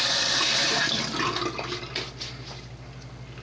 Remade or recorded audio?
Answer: recorded